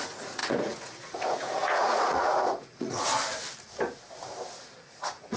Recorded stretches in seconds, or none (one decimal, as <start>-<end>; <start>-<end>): 3.1-4.8